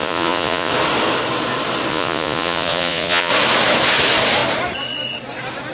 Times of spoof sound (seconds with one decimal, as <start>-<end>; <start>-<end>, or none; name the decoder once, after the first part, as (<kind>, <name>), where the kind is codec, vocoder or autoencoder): 0.0-0.7 (vocoder, Vocos); 1.9-3.3